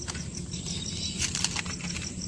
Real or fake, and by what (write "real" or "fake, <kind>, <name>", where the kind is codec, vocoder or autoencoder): fake, vocoder, BigVGAN v2